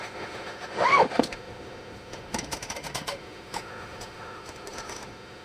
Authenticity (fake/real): fake